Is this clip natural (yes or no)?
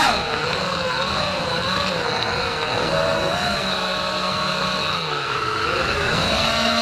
no